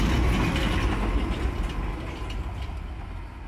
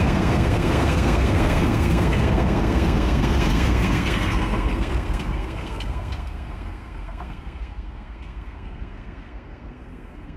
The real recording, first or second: first